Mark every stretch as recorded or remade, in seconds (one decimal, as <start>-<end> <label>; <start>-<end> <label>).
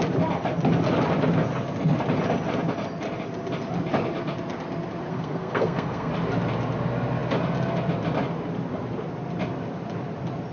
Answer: 0.0-5.1 recorded; 5.1-6.1 remade; 6.1-10.5 recorded